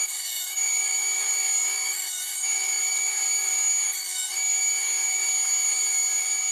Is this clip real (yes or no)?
no